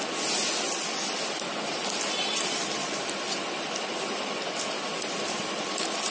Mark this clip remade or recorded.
recorded